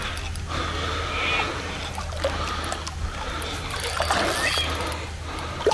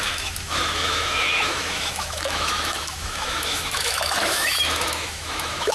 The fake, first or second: second